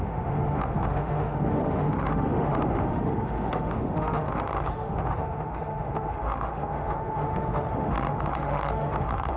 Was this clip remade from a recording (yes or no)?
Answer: yes